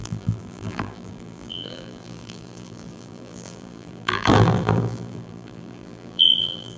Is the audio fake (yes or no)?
yes